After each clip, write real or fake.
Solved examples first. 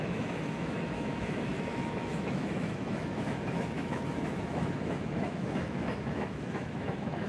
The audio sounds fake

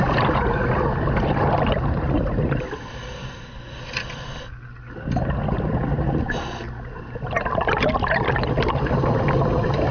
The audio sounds real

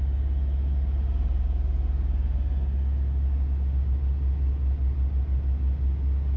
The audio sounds real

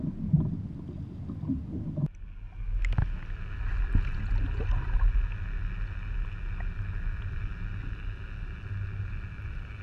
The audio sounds real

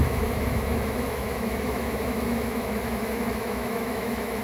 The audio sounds fake